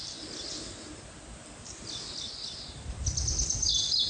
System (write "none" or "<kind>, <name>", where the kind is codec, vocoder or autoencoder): none